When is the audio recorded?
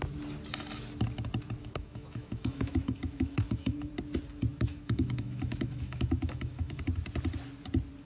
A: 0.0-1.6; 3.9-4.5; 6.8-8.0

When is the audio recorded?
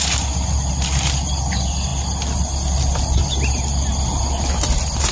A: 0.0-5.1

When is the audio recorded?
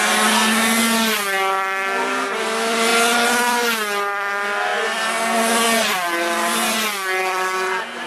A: 0.0-8.1